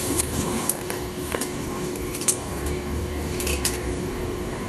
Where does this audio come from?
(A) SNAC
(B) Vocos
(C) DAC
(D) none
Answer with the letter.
C